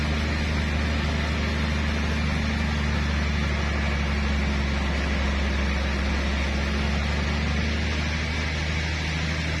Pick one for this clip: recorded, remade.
recorded